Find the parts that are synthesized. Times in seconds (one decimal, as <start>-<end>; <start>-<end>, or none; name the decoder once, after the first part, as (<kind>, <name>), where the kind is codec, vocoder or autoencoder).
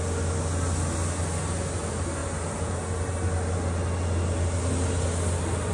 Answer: none